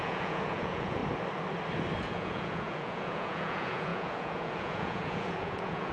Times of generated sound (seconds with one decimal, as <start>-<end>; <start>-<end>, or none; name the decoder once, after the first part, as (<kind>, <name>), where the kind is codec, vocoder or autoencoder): 0.0-1.0 (vocoder, Vocos); 2.0-5.9